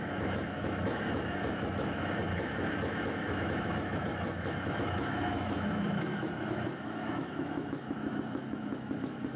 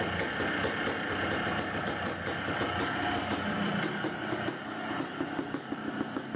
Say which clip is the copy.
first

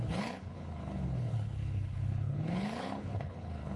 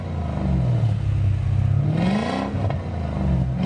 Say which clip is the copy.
first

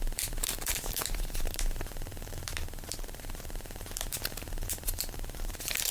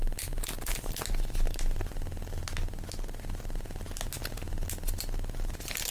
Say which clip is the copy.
first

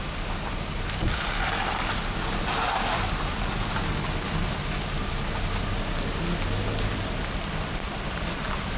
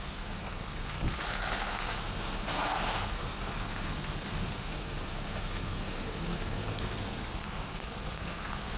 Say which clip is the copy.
second